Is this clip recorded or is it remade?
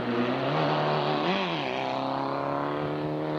recorded